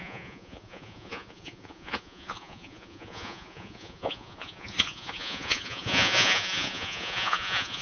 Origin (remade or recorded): remade